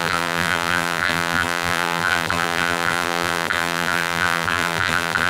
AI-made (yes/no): yes